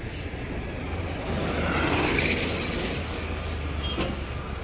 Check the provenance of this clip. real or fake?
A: real